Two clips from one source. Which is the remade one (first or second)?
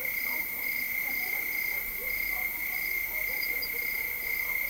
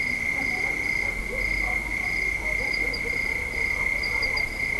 first